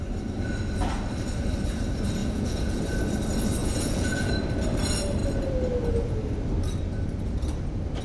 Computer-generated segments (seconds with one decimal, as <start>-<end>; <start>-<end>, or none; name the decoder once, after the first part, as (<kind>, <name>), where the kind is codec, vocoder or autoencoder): 2.2-2.8 (vocoder, Vocos); 3.6-4.3

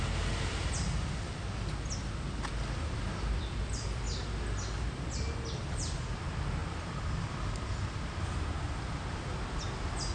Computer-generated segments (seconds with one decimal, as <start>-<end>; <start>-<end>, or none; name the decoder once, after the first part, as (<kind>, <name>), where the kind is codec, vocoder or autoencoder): none

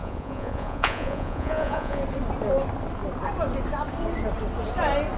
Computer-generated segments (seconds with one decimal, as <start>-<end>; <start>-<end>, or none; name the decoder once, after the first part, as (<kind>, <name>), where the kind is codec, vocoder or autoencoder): 0.0-2.0 (vocoder, Vocos)

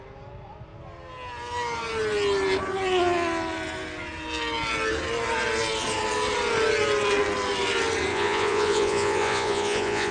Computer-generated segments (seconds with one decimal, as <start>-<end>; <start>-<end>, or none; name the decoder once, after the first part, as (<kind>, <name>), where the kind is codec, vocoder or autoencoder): 8.1-10.1 (vocoder, Vocos)

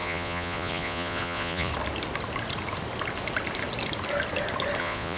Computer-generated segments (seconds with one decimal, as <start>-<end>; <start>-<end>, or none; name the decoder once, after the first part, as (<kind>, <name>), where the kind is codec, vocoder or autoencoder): 0.0-1.7 (vocoder, Vocos); 4.8-5.2

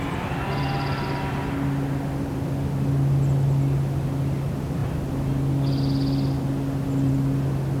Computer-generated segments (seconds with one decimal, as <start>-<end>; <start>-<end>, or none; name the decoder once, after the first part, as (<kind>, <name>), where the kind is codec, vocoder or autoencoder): none